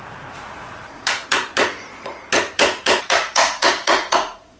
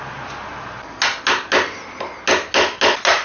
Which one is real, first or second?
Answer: second